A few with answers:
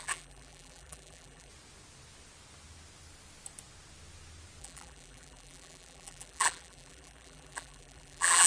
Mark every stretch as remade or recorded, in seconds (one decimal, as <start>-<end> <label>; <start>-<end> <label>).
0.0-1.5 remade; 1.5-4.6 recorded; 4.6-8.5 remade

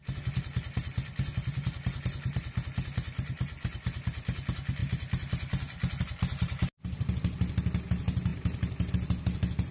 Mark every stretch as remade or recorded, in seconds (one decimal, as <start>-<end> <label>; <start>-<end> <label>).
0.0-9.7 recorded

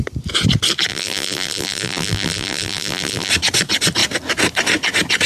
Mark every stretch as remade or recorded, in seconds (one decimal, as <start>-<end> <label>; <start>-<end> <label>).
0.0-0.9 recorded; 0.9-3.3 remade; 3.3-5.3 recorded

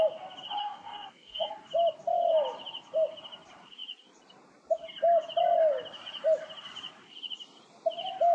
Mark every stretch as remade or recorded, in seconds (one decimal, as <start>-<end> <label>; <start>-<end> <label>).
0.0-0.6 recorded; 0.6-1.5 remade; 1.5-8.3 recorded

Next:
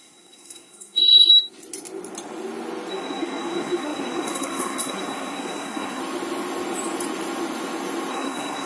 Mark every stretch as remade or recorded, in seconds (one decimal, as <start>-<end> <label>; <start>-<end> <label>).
0.0-1.3 remade; 1.3-2.9 recorded; 2.9-6.0 remade; 6.0-8.1 recorded; 8.1-8.7 remade

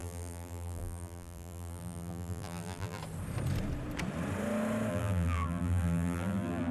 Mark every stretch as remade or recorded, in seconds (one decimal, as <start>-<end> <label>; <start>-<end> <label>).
0.0-3.0 remade; 3.0-4.9 recorded; 4.9-6.7 remade

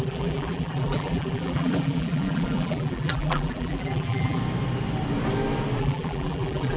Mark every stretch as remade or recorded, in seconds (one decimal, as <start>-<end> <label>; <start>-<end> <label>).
0.0-4.4 remade; 4.4-5.8 recorded; 5.8-6.8 remade